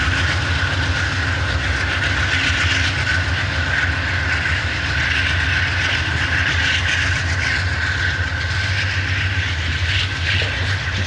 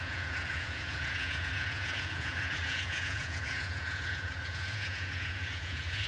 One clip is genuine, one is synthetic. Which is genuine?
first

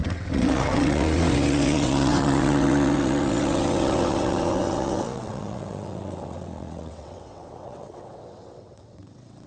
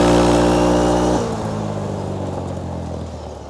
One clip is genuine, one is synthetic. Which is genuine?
second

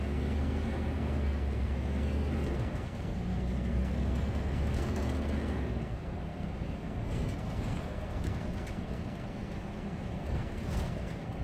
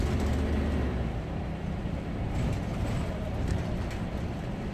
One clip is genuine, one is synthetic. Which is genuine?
second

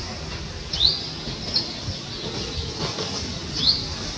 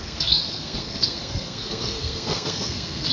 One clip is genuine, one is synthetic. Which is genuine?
first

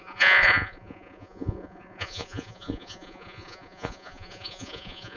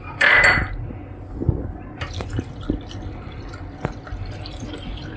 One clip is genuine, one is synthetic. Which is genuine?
second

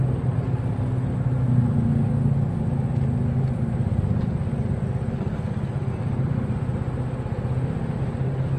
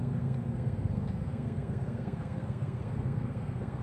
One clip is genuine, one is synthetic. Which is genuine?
first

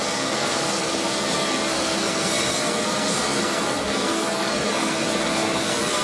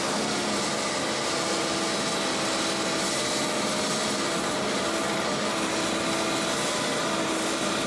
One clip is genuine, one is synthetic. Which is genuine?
second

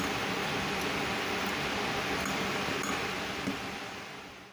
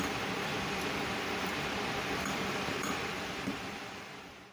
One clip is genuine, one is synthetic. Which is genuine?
first